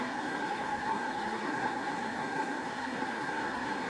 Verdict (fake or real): fake